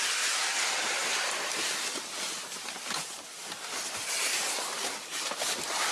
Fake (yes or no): no